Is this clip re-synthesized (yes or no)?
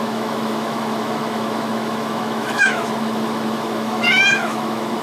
yes